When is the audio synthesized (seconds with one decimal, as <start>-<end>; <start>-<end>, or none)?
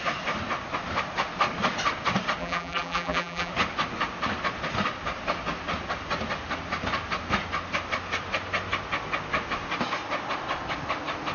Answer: 2.4-3.5